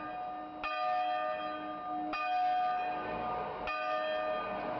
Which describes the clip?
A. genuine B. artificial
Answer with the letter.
A